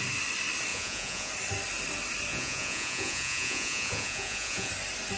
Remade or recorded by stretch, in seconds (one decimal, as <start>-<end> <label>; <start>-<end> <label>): 0.0-0.7 recorded; 0.7-1.3 remade; 1.3-2.3 recorded; 2.3-4.7 remade; 4.7-5.2 recorded